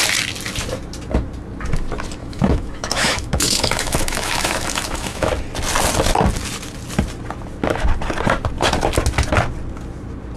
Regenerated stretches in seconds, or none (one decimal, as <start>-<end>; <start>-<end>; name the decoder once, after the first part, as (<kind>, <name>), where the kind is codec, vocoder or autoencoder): 2.2-5.3 (autoencoder, DAC-VAE)